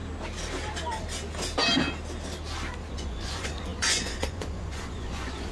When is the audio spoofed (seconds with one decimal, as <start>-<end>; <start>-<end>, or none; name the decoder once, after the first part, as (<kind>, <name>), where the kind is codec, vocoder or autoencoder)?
2.9-5.5 (vocoder, Vocos)